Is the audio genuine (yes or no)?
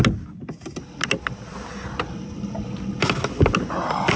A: yes